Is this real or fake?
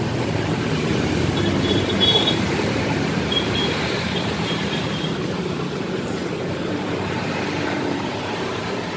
fake